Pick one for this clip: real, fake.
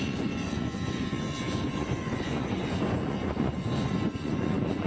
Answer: fake